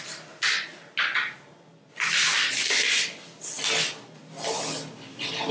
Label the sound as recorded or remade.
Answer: recorded